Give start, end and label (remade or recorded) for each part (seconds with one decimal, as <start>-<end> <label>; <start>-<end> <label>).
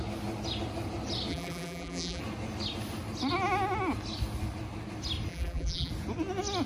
0.0-1.3 recorded; 1.3-2.2 remade; 2.2-5.3 recorded; 5.3-5.9 remade; 5.9-6.7 recorded